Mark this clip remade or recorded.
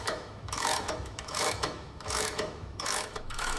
remade